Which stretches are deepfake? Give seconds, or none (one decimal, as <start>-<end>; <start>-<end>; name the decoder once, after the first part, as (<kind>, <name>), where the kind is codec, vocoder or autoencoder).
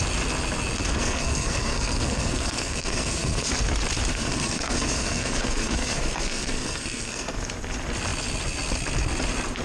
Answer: 1.0-3.5 (codec, SNAC); 4.1-7.4